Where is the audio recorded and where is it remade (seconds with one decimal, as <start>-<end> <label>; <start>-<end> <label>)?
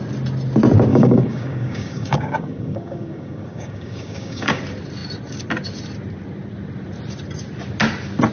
0.0-0.9 recorded; 0.9-4.6 remade; 4.6-8.3 recorded